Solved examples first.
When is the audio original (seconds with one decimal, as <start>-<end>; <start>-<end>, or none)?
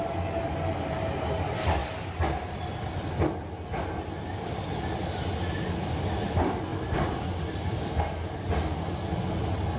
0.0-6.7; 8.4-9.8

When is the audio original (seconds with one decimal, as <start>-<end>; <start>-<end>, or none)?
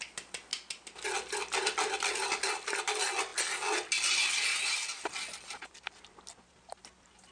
0.0-7.3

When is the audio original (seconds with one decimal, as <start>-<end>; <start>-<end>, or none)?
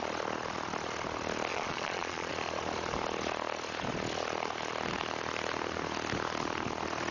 0.0-1.5; 2.3-7.1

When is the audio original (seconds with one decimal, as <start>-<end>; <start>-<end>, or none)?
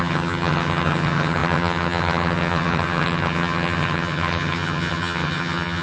none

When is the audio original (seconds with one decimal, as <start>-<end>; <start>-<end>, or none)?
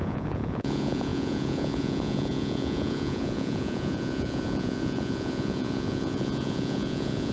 none